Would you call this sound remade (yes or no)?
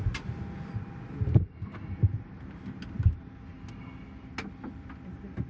no